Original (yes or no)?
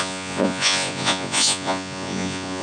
no